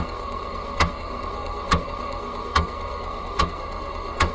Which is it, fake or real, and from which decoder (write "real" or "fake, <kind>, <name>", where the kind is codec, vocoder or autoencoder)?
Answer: fake, codec, SNAC